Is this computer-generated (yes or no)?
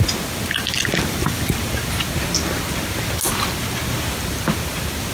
no